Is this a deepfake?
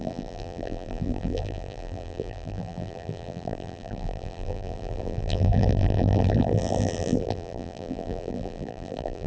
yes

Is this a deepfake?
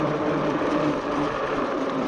yes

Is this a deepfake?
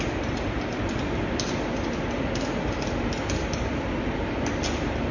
no